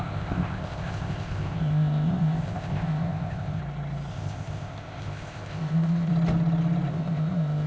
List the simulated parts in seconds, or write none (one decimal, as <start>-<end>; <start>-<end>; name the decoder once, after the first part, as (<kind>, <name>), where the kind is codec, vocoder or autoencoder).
0.0-3.6 (codec, ZipCodec); 4.1-6.1; 6.9-7.7